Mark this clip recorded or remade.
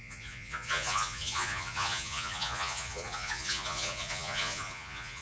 remade